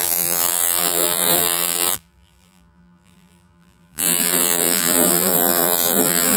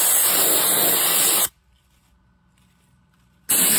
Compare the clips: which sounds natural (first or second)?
second